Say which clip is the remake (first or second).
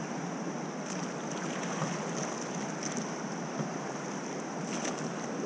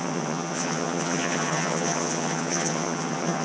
second